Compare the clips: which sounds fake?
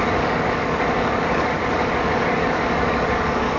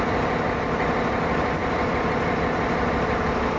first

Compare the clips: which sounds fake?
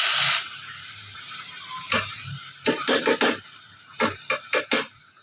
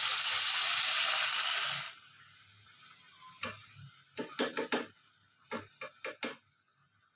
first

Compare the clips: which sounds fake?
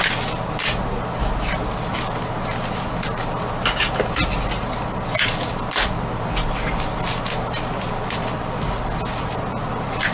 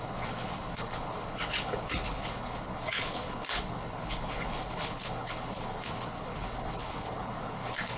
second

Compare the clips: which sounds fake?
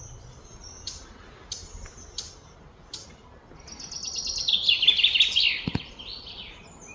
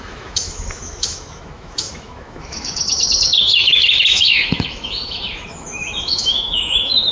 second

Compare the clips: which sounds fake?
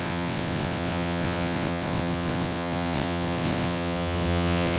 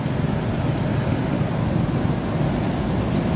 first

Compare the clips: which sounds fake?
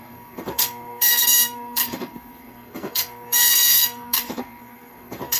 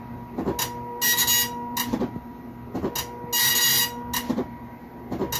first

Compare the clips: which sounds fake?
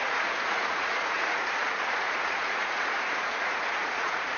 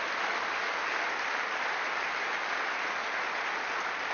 first